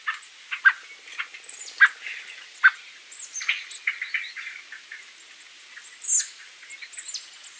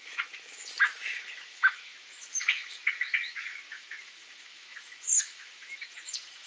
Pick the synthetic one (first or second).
second